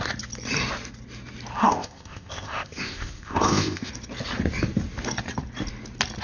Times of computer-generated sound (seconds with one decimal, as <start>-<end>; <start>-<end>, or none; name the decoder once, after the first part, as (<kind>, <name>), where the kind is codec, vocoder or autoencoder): 1.6-3.9 (codec, ZipCodec)